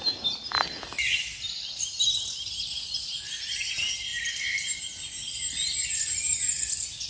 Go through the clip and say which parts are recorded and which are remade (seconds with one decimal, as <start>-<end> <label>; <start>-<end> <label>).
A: 0.0-7.1 recorded